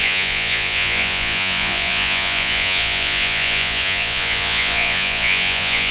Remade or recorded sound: remade